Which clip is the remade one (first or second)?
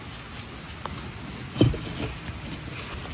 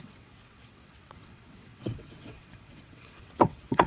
second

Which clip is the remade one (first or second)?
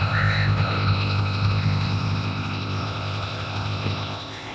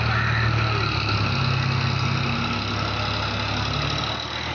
first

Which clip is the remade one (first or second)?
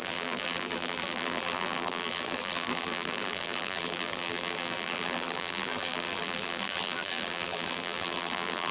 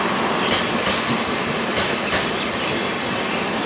first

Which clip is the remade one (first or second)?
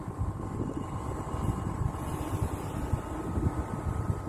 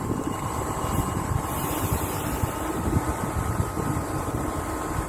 second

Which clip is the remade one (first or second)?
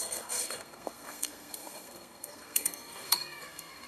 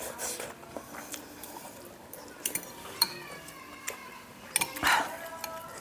first